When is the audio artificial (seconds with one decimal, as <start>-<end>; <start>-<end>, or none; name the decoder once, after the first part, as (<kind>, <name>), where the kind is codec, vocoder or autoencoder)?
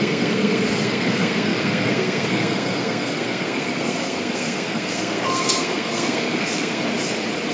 0.0-6.8 (codec, SNAC)